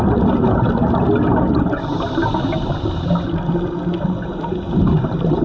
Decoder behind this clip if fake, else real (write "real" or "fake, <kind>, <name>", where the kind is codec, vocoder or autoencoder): real